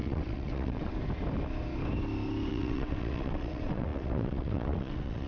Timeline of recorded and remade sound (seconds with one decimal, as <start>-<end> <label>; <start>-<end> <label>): 0.0-0.9 remade; 0.9-2.5 recorded; 2.5-5.3 remade